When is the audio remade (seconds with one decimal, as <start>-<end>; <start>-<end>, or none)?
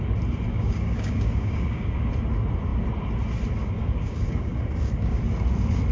0.5-2.1; 3.6-5.2